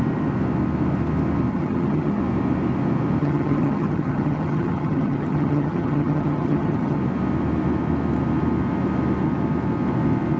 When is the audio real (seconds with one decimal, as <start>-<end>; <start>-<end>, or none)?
0.0-1.5; 2.2-3.2; 7.0-10.4

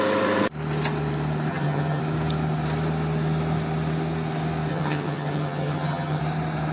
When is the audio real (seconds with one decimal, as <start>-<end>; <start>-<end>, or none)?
0.0-1.5; 2.0-4.7; 6.2-6.7

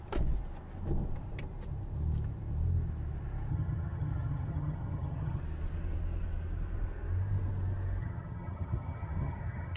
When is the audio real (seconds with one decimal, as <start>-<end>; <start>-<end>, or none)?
0.0-3.5; 5.4-8.0

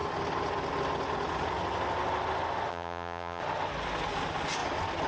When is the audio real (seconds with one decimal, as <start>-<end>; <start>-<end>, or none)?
0.0-2.7; 3.4-5.1

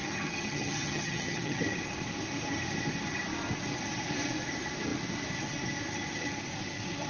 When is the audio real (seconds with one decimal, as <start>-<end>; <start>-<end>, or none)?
1.6-7.1

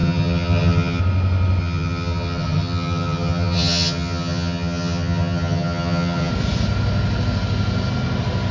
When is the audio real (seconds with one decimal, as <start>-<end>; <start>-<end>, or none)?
1.0-1.6; 6.3-8.5

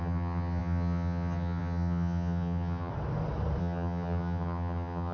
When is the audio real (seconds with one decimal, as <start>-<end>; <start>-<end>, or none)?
2.9-3.6

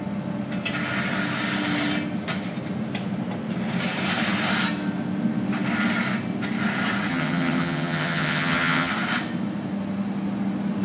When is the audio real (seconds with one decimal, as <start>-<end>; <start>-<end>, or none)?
0.0-7.1; 8.9-10.8